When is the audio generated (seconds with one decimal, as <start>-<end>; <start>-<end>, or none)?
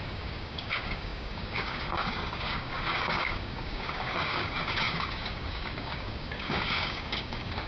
0.0-7.7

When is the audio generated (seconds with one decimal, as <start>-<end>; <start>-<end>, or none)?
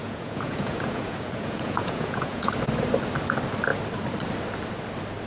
0.0-2.5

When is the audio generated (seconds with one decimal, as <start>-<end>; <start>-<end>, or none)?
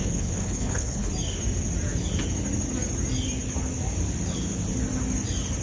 0.0-1.1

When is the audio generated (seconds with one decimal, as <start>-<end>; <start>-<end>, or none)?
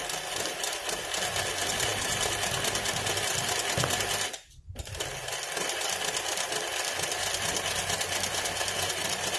none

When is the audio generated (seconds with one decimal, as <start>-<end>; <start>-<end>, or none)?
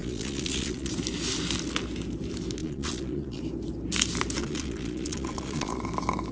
0.0-0.9; 2.6-3.4; 4.4-5.8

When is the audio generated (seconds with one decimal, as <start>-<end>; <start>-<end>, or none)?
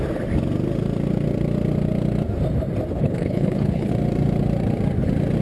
2.9-3.9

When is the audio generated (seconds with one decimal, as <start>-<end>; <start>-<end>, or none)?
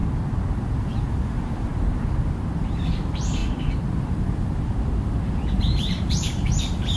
0.8-1.7; 2.6-3.4; 5.6-7.0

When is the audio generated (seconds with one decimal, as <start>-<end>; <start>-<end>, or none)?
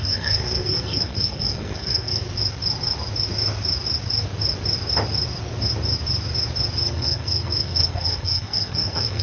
0.0-2.2; 6.9-9.2